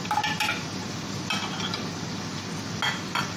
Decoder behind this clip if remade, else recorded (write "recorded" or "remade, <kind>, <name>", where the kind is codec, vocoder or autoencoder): recorded